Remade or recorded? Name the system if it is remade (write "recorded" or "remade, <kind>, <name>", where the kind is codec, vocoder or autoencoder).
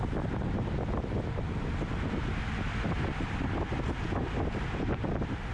recorded